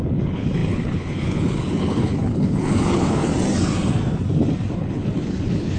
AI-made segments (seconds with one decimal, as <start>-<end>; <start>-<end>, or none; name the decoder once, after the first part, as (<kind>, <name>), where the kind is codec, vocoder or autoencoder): 0.0-3.3 (codec, HILCodec); 4.7-5.8